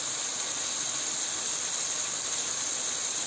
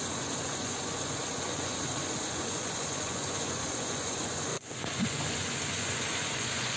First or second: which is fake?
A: second